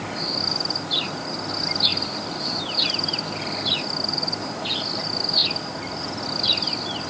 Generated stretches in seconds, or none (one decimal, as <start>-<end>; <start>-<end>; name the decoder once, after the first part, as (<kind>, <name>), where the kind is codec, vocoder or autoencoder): 1.9-2.8 (vocoder, BigVGAN v2)